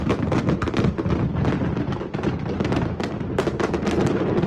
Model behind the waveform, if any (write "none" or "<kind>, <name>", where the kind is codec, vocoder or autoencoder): none